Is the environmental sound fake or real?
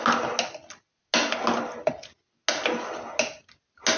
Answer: real